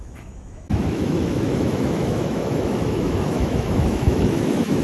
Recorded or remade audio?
remade